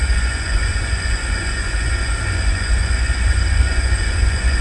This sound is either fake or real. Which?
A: fake